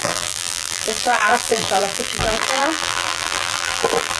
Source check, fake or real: fake